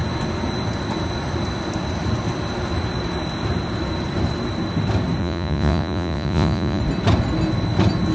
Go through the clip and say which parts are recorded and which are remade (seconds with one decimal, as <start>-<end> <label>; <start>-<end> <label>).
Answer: 0.0-5.2 recorded; 5.2-6.8 remade; 6.8-8.1 recorded